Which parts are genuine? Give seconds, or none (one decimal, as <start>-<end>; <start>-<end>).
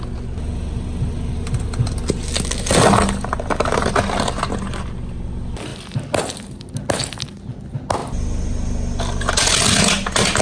0.0-10.4